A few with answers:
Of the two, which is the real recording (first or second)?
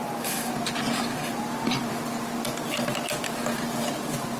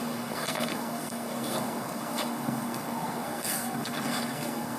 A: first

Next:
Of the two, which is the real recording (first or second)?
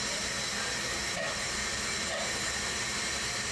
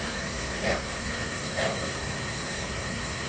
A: first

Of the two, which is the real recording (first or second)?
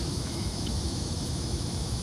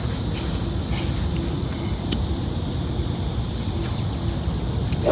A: second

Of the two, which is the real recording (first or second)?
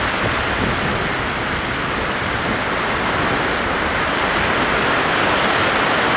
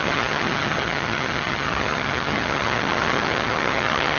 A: first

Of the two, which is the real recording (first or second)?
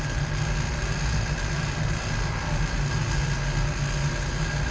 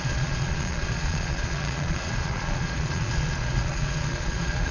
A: first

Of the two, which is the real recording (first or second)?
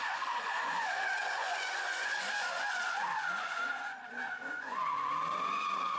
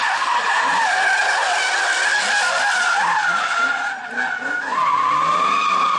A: second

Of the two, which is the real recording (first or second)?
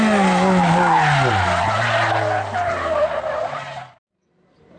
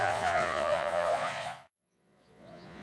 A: first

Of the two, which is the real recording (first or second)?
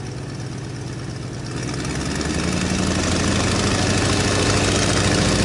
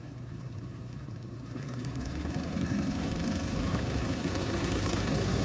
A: first